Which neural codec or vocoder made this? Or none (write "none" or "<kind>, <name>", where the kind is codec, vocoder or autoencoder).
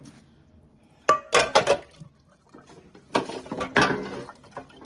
none